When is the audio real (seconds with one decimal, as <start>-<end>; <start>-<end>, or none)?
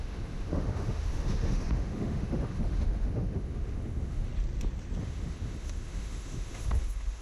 4.3-5.0